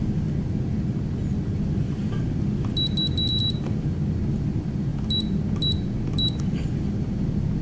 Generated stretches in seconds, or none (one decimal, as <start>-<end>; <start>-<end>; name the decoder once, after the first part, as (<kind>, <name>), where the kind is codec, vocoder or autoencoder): none